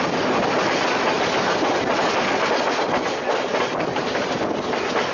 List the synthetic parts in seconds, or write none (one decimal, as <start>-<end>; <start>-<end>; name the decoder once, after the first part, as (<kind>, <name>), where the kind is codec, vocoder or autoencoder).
none